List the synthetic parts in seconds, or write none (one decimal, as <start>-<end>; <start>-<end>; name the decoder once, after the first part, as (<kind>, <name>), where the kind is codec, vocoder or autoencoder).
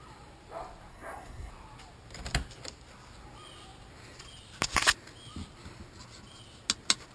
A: 0.9-1.5 (codec, SNAC)